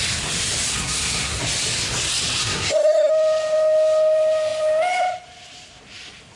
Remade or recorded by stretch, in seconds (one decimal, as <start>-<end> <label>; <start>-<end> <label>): 0.0-0.7 recorded; 0.7-1.4 remade; 1.4-2.4 recorded; 2.4-3.1 remade; 3.1-6.4 recorded